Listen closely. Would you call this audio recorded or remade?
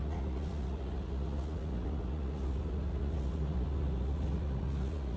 remade